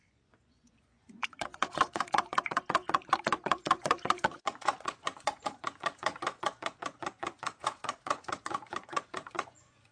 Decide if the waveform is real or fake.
fake